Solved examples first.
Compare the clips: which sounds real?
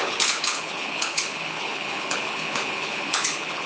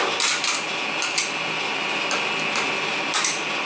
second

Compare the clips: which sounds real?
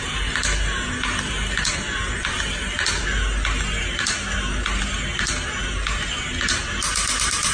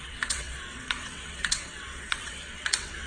first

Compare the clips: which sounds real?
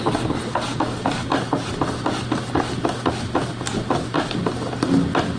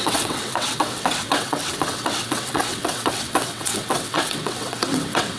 first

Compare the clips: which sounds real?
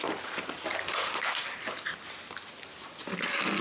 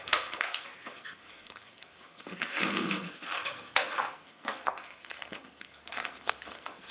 first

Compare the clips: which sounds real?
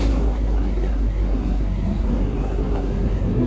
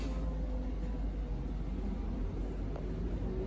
second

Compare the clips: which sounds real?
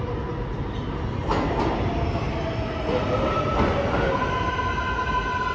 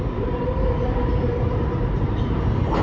first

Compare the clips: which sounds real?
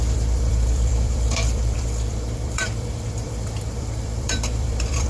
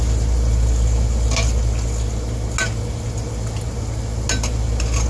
second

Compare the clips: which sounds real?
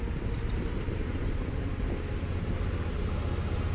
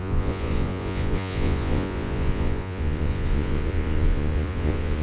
first